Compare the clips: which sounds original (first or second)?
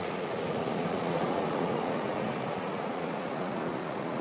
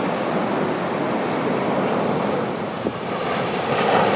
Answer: second